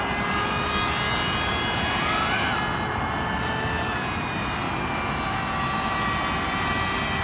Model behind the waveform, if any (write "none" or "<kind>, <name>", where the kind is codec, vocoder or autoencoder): none